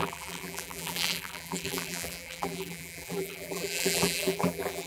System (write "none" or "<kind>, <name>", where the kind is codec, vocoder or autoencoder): vocoder, BigVGAN v2